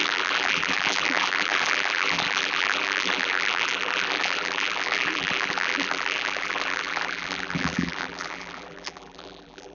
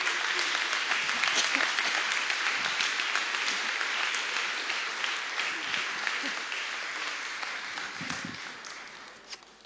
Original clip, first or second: second